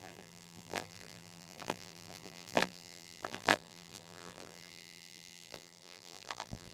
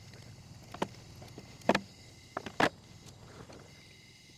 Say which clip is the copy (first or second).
first